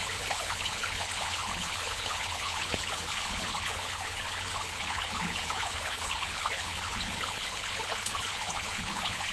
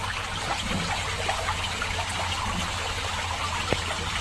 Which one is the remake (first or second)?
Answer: first